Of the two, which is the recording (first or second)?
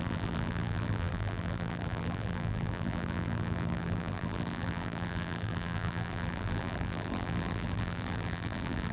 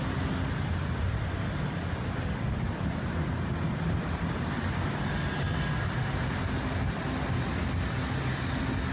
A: second